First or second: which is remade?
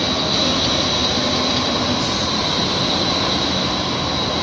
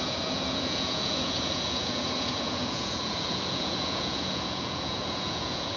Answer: second